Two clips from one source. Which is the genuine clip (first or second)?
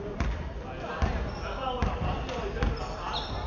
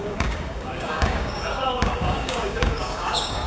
first